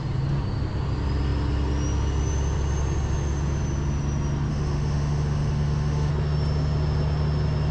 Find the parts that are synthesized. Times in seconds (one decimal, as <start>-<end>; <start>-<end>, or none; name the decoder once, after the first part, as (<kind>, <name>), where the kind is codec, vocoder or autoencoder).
4.5-6.1 (autoencoder, DAC-VAE)